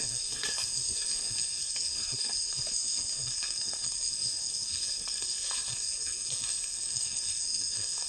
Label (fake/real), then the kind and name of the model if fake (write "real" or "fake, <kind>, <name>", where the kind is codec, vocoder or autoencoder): fake, codec, SNAC